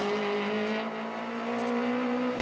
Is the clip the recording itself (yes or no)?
yes